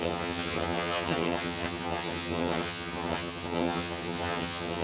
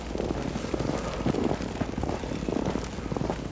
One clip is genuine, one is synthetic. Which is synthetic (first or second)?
first